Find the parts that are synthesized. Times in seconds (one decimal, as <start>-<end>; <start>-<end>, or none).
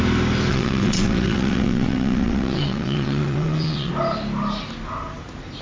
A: 0.5-3.9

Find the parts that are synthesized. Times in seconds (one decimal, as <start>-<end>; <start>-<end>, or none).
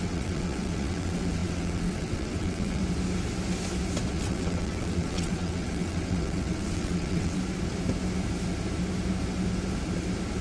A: 0.0-2.8; 4.1-7.4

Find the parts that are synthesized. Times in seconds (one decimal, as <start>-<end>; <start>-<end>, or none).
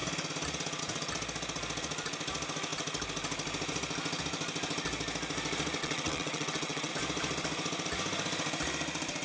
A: 5.8-6.9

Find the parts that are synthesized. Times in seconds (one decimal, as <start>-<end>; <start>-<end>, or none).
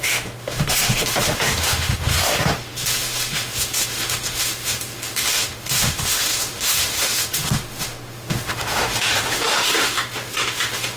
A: 0.0-11.0